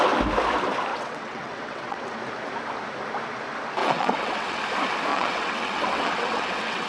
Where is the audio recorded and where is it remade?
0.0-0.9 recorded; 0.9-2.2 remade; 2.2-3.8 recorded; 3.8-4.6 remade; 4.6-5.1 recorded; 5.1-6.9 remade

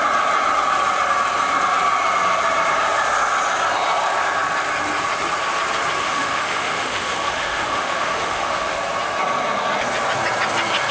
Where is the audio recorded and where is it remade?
0.0-6.0 recorded; 6.0-8.8 remade; 8.8-10.9 recorded

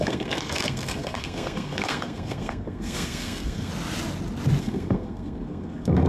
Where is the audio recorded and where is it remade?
0.0-3.7 remade; 3.7-4.6 recorded; 4.6-6.1 remade

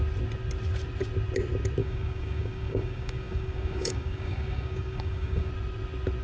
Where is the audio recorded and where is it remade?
0.0-1.8 recorded; 1.8-5.5 remade; 5.5-6.2 recorded